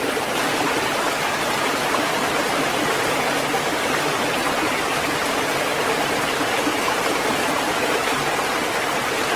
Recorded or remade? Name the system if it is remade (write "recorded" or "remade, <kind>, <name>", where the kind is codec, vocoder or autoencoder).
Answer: recorded